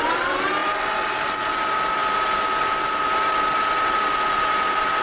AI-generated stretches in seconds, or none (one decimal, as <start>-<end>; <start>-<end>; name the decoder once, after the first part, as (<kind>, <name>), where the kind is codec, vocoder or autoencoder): none

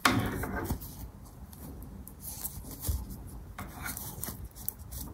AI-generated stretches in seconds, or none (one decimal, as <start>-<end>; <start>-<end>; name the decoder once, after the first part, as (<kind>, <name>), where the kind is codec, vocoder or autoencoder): none

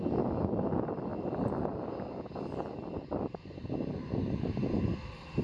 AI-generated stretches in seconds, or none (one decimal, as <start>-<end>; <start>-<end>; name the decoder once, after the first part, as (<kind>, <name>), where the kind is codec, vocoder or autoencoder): none